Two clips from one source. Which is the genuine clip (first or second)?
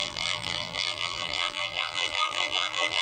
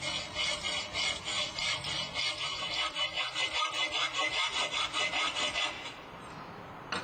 second